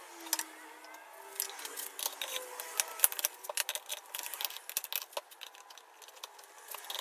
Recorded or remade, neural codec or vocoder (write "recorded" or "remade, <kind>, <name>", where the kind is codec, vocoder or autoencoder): recorded